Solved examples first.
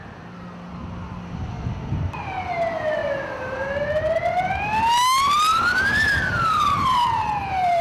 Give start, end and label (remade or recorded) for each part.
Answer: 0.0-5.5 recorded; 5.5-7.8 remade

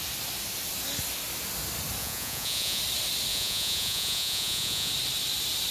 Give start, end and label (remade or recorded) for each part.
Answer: 0.0-2.0 recorded; 2.0-2.8 remade; 2.8-3.3 recorded; 3.3-4.9 remade; 4.9-5.7 recorded

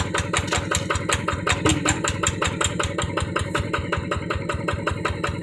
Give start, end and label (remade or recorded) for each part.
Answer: 0.0-1.7 recorded; 1.7-4.9 remade; 4.9-5.4 recorded

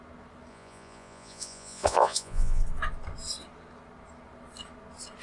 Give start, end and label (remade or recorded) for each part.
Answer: 0.0-0.5 recorded; 0.5-2.6 remade; 2.6-5.2 recorded

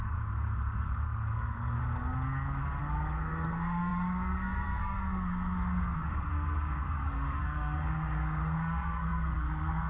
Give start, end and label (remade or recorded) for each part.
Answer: 0.0-1.8 remade; 1.8-2.8 recorded; 2.8-9.9 remade

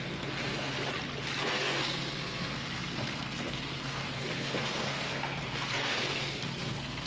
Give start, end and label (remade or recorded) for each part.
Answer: 0.0-0.7 remade; 0.7-1.4 recorded; 1.4-7.1 remade